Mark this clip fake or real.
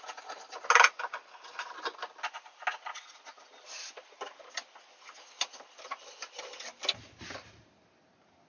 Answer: real